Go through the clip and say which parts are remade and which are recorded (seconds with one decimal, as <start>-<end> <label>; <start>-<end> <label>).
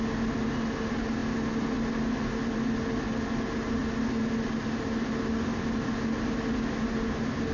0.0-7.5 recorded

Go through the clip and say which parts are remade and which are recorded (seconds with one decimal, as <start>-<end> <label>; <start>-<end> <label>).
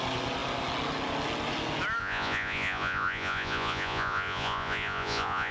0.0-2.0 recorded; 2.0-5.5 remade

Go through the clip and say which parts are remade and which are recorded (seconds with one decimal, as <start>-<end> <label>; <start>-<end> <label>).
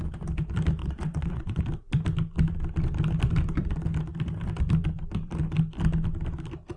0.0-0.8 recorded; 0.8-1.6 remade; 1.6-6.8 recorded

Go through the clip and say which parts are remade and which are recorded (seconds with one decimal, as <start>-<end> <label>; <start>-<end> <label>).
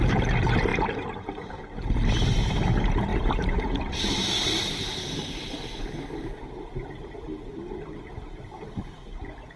0.0-0.7 recorded; 0.7-1.5 remade; 1.5-3.1 recorded; 3.1-7.5 remade; 7.5-9.6 recorded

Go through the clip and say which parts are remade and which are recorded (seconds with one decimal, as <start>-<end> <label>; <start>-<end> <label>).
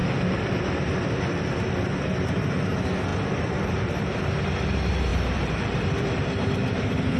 0.0-3.1 recorded; 3.1-4.0 remade; 4.0-5.1 recorded; 5.1-7.2 remade